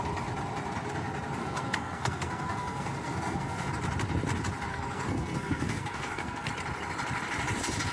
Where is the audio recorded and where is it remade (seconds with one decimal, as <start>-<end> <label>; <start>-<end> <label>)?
0.0-1.4 recorded; 1.4-3.7 remade; 3.7-4.7 recorded; 4.7-6.5 remade; 6.5-7.9 recorded